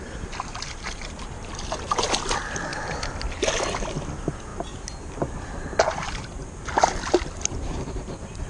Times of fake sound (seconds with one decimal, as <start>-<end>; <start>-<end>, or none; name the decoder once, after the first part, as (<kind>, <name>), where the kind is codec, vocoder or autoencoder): none

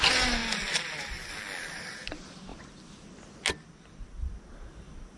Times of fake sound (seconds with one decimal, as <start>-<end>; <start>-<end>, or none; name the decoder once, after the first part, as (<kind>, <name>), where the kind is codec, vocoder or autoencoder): none